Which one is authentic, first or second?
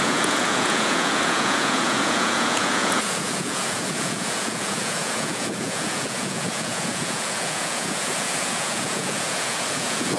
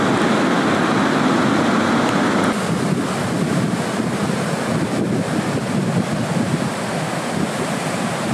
second